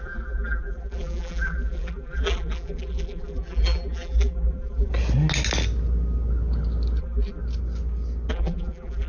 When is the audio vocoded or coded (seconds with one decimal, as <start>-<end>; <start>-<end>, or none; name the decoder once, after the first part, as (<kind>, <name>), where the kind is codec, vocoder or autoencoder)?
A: 0.0-4.9 (vocoder, BigVGAN v2); 7.0-7.4; 8.3-9.1